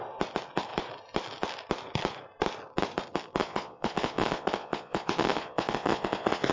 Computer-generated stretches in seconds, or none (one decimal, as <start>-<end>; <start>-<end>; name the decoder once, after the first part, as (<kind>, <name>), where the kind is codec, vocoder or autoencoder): 3.4-6.5 (vocoder, Vocos)